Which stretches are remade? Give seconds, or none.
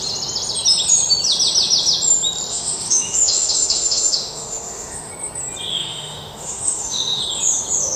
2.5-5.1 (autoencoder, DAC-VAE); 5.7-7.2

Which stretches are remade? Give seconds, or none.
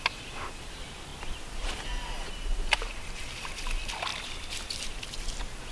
none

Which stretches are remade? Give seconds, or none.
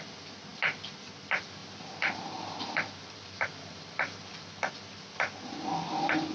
1.6-4.7 (vocoder, BigVGAN v2)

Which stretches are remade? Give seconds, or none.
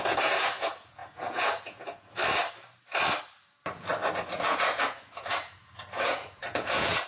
0.0-2.2 (vocoder, Vocos); 4.2-7.1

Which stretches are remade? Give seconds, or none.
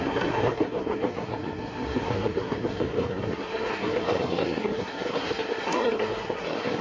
0.0-6.8 (codec, SNAC)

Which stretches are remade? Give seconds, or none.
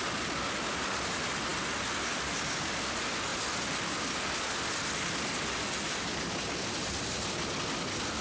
none